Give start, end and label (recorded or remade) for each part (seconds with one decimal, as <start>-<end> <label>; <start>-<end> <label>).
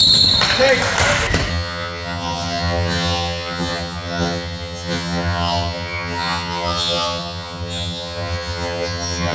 0.0-1.5 recorded; 1.5-9.3 remade